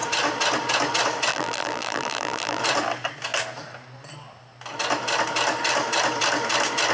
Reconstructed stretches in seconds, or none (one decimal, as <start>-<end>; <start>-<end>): 1.3-2.6